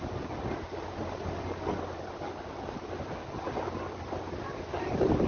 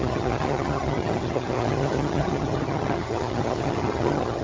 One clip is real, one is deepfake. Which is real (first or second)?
first